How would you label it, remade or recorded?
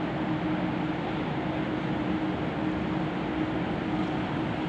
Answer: recorded